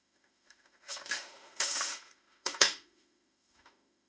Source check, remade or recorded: remade